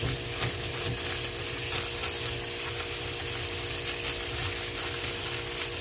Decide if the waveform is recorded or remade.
recorded